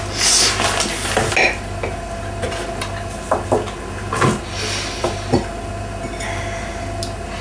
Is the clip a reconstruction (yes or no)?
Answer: no